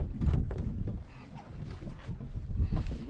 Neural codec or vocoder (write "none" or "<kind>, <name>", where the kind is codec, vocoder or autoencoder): none